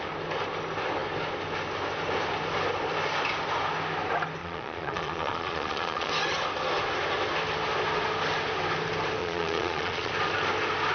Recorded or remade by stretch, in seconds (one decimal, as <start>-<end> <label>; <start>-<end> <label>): 0.0-4.4 recorded; 4.4-6.1 remade; 6.1-9.2 recorded; 9.2-10.1 remade; 10.1-10.9 recorded